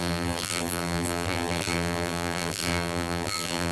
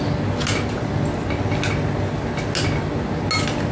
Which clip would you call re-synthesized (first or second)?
first